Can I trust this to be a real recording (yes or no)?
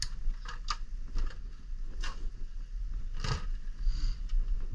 yes